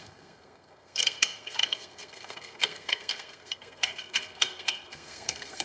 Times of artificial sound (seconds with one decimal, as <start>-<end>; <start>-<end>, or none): 0.0-5.6